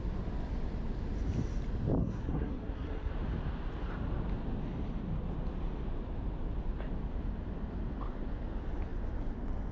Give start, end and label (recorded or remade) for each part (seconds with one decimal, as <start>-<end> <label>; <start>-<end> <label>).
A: 0.0-2.0 recorded; 2.0-3.1 remade; 3.1-9.7 recorded